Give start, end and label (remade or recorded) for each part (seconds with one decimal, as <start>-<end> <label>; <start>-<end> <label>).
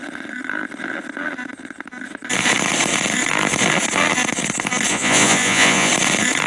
0.0-4.9 recorded; 4.9-5.9 remade; 5.9-6.5 recorded